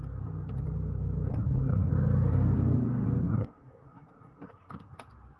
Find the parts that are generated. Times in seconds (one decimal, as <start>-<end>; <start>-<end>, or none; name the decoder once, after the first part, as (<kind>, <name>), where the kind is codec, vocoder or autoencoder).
1.3-1.9 (codec, SNAC); 3.2-4.9